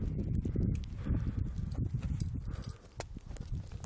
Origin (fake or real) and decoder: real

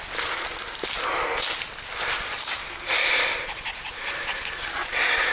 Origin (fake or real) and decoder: real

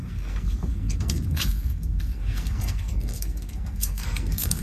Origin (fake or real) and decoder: fake, codec, SNAC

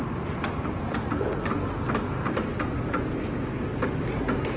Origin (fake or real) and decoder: real